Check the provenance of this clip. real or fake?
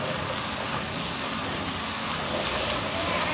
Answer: real